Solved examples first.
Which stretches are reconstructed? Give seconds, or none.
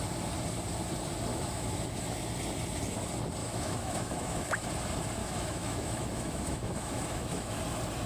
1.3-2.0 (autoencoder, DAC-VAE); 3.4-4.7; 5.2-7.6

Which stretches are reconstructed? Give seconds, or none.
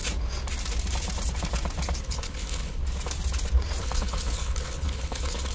2.0-2.8 (codec, HILCodec); 3.8-5.5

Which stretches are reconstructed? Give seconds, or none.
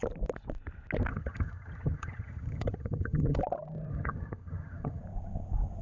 1.1-3.4 (vocoder, HiFi-GAN); 3.9-5.0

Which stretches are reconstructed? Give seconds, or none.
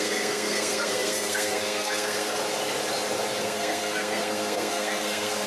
0.0-2.4 (codec, SNAC); 3.4-5.5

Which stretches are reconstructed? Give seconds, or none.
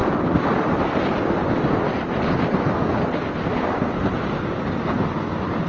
0.5-1.4 (vocoder, BigVGAN v2); 4.8-5.7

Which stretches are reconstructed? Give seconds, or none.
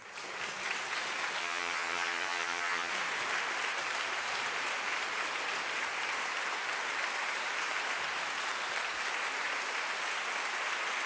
1.4-2.9 (vocoder, HiFi-GAN)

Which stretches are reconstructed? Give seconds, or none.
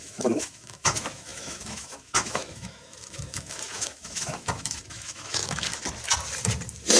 0.0-5.7 (autoencoder, DAC-VAE)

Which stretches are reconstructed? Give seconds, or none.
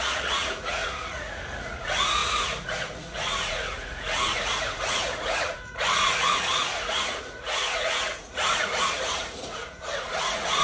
0.0-10.6 (vocoder, Vocos)